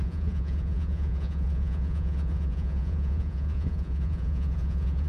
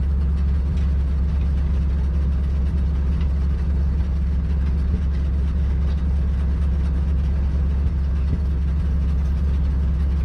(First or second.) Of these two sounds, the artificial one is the first